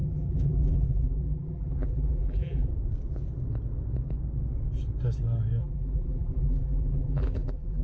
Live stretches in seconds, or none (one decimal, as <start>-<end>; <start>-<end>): 2.7-5.6